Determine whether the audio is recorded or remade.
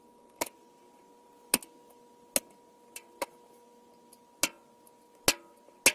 recorded